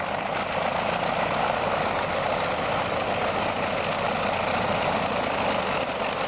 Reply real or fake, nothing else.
real